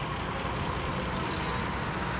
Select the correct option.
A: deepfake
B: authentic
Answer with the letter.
B